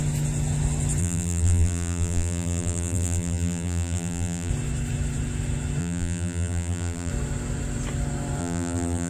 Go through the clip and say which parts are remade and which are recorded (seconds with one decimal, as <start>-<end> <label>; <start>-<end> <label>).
0.0-1.0 recorded; 1.0-4.5 remade; 4.5-5.8 recorded; 5.8-7.1 remade; 7.1-8.4 recorded; 8.4-9.1 remade